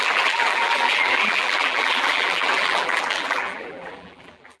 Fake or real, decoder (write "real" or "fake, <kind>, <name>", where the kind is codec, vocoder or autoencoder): fake, vocoder, BigVGAN v2